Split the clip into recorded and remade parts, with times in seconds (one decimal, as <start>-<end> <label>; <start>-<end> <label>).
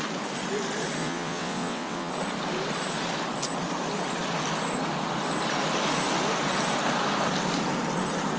0.0-1.0 recorded; 1.0-2.1 remade; 2.1-8.4 recorded